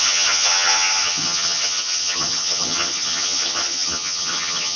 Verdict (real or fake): fake